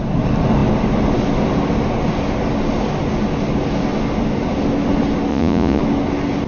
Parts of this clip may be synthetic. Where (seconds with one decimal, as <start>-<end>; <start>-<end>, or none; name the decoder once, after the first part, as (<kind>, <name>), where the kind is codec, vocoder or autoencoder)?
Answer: 5.3-5.8 (vocoder, Vocos)